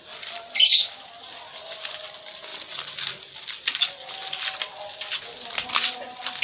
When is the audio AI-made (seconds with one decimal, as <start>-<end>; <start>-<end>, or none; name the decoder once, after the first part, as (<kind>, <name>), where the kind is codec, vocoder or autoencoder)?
none